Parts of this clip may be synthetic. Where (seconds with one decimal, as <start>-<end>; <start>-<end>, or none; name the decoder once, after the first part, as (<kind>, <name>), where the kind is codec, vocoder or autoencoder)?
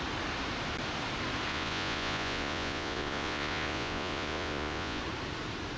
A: 1.5-5.0 (vocoder, Vocos)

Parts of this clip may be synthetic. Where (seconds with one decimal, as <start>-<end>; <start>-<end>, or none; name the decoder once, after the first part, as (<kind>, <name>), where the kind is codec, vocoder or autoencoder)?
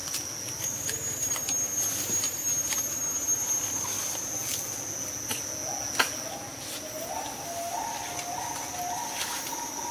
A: none